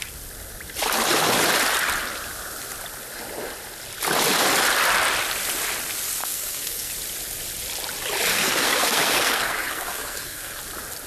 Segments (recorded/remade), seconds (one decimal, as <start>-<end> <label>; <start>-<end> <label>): 0.0-6.2 recorded; 6.2-6.9 remade; 6.9-8.3 recorded; 8.3-10.6 remade; 10.6-11.1 recorded